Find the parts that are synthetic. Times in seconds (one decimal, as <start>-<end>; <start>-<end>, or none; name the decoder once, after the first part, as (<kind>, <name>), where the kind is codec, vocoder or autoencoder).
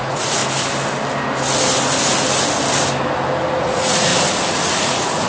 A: 0.0-0.4 (vocoder, Vocos); 3.6-4.1; 4.8-5.3